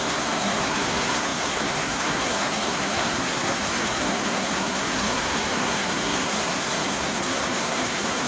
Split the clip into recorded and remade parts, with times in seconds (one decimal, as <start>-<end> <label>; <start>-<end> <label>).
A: 0.0-8.3 remade